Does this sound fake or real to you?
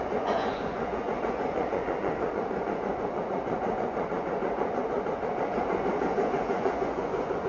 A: fake